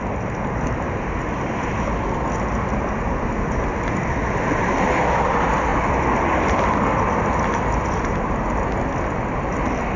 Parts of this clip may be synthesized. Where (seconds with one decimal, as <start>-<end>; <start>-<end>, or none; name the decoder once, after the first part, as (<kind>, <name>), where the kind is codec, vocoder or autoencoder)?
none